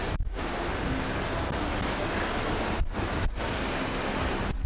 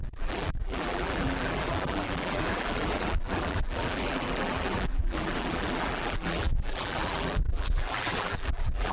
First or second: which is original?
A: first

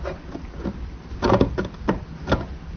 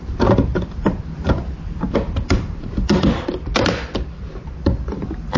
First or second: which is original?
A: first